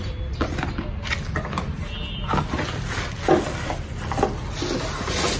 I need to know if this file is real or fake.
real